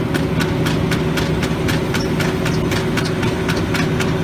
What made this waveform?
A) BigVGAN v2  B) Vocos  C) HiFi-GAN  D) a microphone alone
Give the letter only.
D